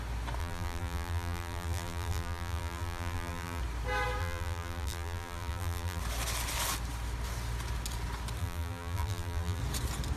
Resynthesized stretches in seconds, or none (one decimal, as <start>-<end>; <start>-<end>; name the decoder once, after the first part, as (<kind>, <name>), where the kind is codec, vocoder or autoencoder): 0.4-3.6 (vocoder, BigVGAN v2); 4.2-6.0; 8.4-9.6